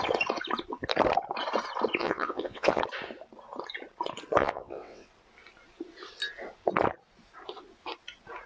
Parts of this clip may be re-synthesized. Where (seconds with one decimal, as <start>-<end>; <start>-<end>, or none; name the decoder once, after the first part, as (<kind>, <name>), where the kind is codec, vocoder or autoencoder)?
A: 2.0-2.8 (vocoder, WaveNeXt); 4.4-5.1